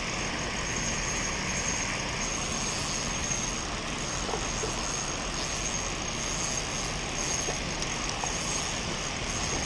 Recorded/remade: recorded